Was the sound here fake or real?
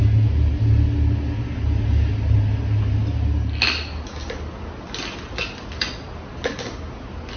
real